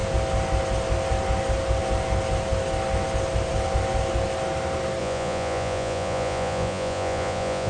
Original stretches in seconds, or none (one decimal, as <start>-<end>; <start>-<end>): 0.0-5.0